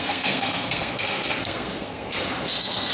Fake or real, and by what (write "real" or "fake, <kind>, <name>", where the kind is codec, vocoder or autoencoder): fake, codec, SNAC